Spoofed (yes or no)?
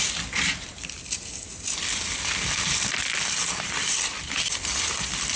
yes